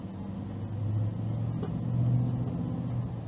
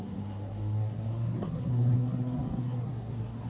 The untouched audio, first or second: first